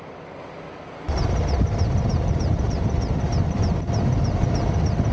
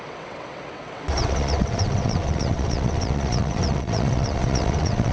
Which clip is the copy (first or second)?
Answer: second